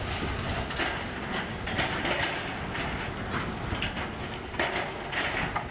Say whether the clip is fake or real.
real